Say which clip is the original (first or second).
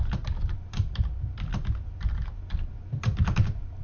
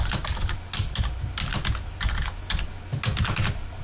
second